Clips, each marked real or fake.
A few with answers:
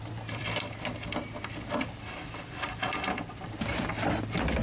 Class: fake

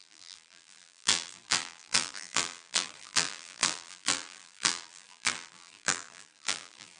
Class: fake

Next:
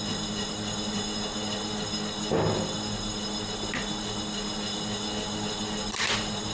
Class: real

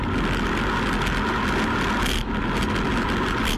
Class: real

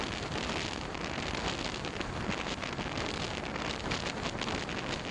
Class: real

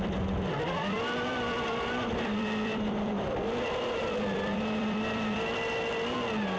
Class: fake